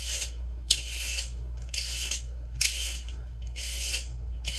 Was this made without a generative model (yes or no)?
no